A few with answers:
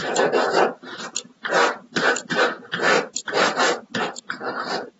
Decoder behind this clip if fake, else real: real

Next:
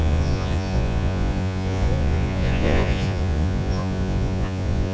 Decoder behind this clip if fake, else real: fake, vocoder, Vocos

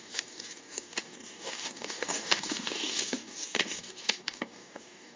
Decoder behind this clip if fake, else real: fake, codec, DAC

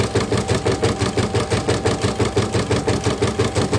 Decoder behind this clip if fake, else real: real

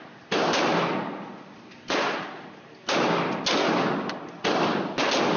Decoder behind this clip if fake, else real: real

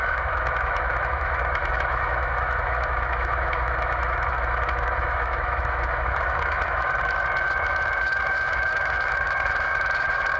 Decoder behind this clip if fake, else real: fake, autoencoder, DAC-VAE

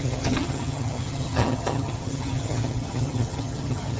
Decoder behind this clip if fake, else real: fake, vocoder, HiFi-GAN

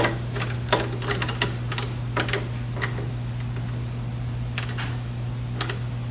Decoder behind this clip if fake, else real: real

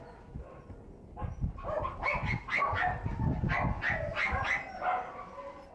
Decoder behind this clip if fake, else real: real